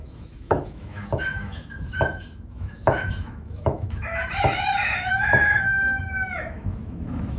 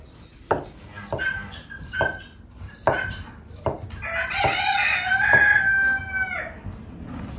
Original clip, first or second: second